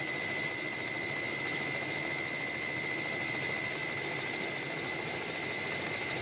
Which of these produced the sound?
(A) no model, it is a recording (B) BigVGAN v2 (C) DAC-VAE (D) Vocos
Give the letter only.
A